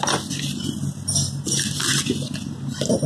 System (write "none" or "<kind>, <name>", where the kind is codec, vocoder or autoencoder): none